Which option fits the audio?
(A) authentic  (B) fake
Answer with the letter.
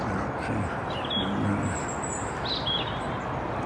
A